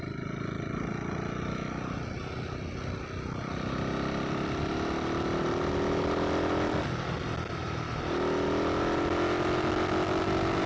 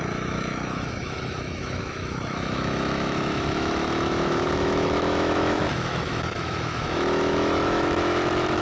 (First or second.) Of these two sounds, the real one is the first